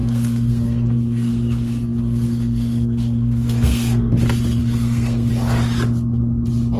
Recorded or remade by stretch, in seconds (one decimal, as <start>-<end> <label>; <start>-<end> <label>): 0.0-4.1 remade; 4.1-4.6 recorded; 4.6-5.3 remade; 5.3-6.8 recorded

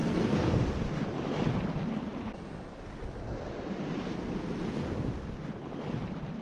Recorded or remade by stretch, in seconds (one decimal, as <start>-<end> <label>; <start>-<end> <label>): 0.0-0.6 remade; 0.6-6.4 recorded

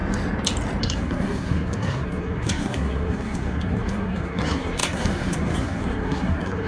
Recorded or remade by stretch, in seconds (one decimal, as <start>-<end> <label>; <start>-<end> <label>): 0.0-0.8 recorded; 0.8-6.7 remade

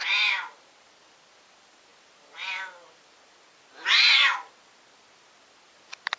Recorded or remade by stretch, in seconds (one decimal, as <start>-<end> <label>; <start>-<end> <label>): 0.0-6.2 recorded

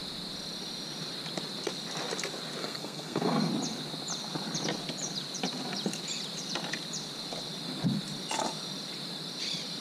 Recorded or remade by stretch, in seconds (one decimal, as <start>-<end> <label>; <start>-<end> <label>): 0.0-2.6 recorded; 2.6-3.5 remade; 3.5-9.8 recorded

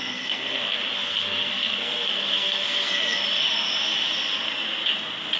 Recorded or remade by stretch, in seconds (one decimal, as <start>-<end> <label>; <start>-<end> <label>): 0.0-3.2 remade; 3.2-5.4 recorded

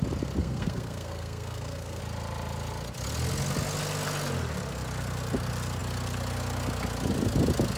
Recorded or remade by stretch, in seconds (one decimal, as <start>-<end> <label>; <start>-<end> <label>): 0.0-0.4 recorded; 0.4-2.0 remade; 2.0-7.8 recorded